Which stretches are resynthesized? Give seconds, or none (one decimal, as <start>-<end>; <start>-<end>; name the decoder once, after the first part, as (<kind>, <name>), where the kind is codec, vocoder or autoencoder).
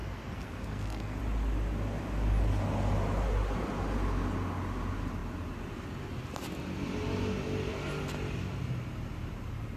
0.0-1.2 (codec, SNAC)